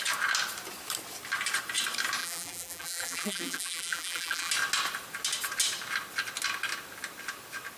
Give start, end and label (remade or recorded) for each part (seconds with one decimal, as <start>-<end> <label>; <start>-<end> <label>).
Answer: 0.0-2.2 recorded; 2.2-4.5 remade; 4.5-7.8 recorded